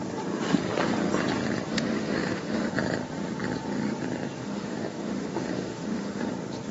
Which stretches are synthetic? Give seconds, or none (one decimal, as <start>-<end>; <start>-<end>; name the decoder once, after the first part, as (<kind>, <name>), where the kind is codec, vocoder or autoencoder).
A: 1.7-2.7 (autoencoder, DAC-VAE); 4.4-6.3